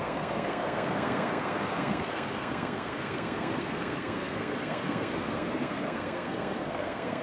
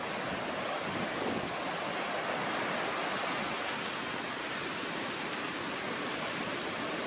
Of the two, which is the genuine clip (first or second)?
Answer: second